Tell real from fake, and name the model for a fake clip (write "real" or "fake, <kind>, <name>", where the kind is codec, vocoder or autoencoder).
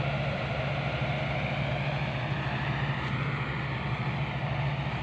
real